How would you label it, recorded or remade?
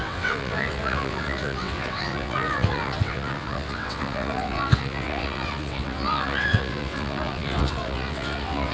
remade